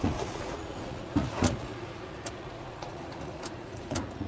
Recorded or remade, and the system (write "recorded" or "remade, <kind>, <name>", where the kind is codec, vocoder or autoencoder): remade, vocoder, Vocos